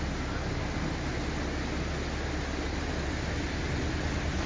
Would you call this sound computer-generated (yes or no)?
no